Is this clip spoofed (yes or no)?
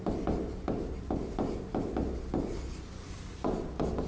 no